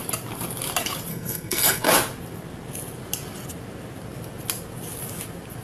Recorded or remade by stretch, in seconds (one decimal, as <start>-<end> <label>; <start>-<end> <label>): 0.0-1.1 recorded; 1.1-1.9 remade; 1.9-5.6 recorded